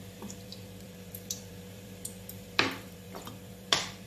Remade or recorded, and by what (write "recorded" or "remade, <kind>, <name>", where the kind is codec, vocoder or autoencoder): remade, vocoder, BigVGAN v2